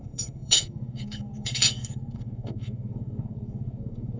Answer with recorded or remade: remade